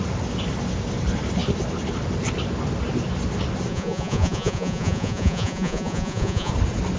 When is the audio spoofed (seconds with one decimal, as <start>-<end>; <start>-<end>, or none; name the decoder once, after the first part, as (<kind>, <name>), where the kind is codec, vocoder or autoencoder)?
3.7-6.5 (vocoder, Vocos)